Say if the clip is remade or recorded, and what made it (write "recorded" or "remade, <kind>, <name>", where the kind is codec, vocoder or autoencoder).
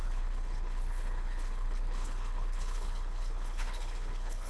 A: remade, codec, HILCodec